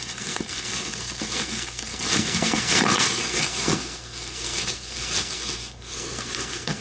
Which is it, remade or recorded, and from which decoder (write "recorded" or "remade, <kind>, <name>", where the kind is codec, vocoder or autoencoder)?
remade, codec, SNAC